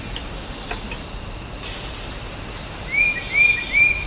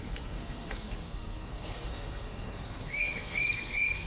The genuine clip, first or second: first